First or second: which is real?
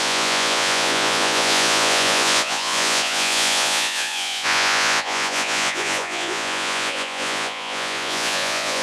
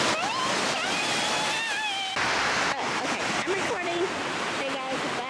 second